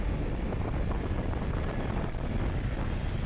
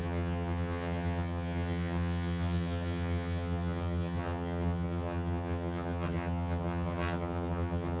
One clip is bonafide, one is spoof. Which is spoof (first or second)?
second